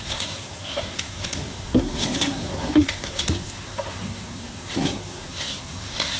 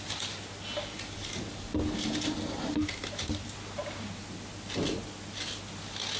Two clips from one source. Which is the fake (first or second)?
first